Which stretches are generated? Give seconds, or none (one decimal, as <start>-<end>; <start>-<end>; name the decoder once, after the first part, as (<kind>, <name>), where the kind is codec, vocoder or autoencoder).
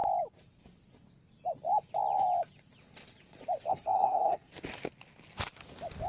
3.7-4.5 (codec, SNAC)